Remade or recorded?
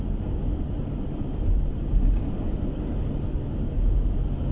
recorded